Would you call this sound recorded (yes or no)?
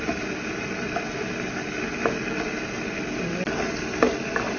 yes